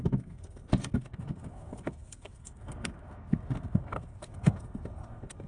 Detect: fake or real fake